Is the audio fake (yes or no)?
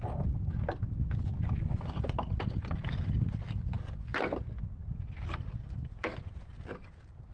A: no